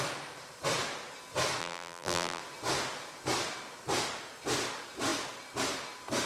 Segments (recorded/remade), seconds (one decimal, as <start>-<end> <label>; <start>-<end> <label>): 0.0-1.6 recorded; 1.6-2.4 remade; 2.4-6.3 recorded